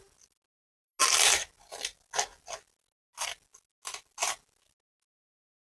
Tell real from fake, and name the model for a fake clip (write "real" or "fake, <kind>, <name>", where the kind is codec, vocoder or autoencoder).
real